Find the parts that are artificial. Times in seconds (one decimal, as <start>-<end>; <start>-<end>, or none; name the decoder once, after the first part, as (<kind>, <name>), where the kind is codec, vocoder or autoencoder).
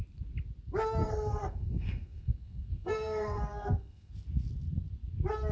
1.0-4.1 (codec, SNAC)